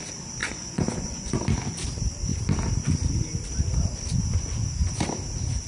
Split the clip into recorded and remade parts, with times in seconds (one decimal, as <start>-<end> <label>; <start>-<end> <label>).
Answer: 0.0-0.4 recorded; 0.4-1.4 remade; 1.4-5.7 recorded